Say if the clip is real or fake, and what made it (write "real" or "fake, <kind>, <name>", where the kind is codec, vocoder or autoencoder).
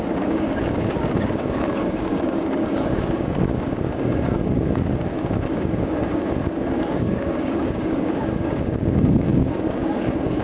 fake, codec, DAC